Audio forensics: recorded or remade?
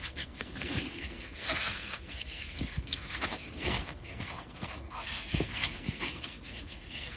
remade